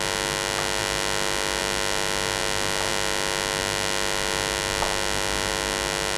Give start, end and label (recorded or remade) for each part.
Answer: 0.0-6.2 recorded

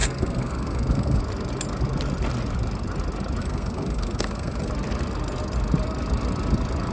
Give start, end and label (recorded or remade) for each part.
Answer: 0.0-1.2 remade; 1.2-3.4 recorded; 3.4-4.7 remade; 4.7-6.9 recorded

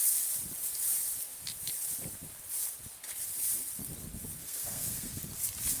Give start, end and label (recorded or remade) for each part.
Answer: 0.0-4.4 recorded; 4.4-5.2 remade; 5.2-5.8 recorded

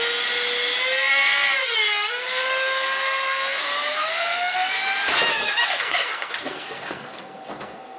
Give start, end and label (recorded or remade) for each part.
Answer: 0.0-1.6 recorded; 1.6-4.8 remade; 4.8-5.3 recorded; 5.3-8.0 remade

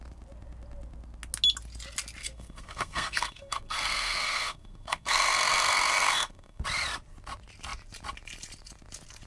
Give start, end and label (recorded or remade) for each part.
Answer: 0.0-2.2 recorded; 2.2-6.6 remade; 6.6-9.3 recorded